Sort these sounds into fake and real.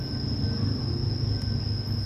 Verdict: real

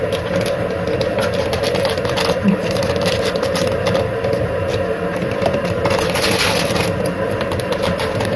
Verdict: real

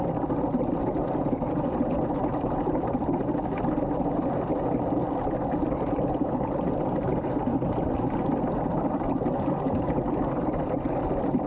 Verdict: real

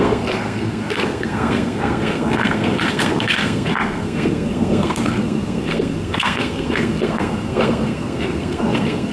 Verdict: fake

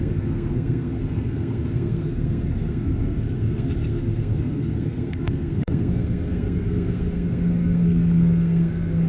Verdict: fake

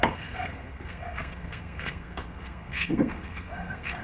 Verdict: fake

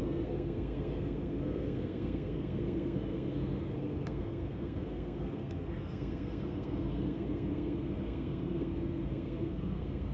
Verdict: fake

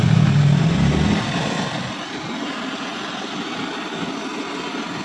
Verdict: real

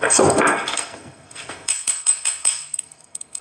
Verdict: fake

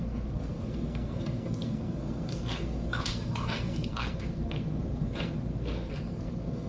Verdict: fake